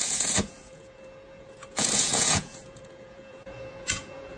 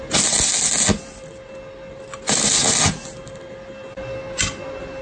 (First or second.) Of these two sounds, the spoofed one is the first